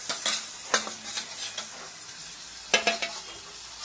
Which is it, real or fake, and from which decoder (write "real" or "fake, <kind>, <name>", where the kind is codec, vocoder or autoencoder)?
real